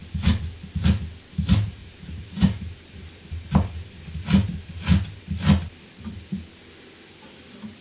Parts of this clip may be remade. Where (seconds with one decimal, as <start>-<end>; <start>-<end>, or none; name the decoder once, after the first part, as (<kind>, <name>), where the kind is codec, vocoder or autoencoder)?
1.8-5.9 (vocoder, BigVGAN v2)